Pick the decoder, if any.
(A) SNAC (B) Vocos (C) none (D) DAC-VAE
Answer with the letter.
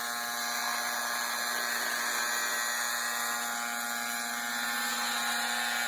C